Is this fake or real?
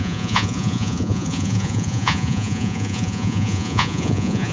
fake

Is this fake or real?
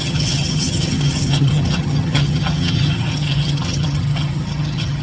fake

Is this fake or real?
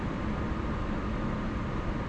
real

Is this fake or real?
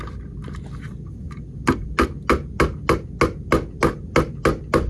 real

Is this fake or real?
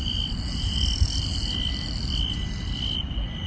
real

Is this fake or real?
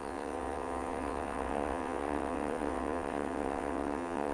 fake